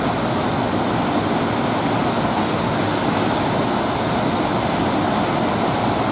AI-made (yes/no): no